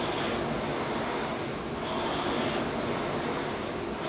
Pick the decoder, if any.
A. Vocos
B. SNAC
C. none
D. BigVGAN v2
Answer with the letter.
C